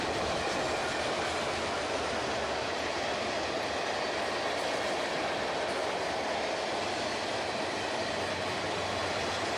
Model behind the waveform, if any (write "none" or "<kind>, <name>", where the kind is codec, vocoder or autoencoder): none